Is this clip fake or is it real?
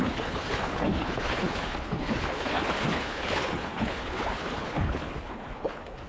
fake